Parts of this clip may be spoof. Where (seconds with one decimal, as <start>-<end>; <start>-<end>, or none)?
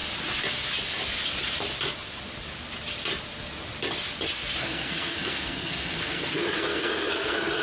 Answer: 4.6-7.6